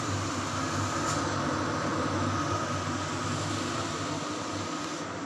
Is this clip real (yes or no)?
yes